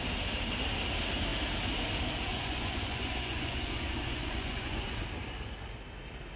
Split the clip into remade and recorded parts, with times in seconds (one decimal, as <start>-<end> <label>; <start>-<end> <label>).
0.0-2.3 recorded; 2.3-5.0 remade; 5.0-6.4 recorded